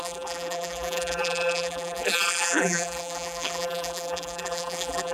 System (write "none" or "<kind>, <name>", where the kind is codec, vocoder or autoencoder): vocoder, BigVGAN v2